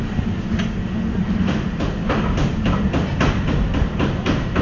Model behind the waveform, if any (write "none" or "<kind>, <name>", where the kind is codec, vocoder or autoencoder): none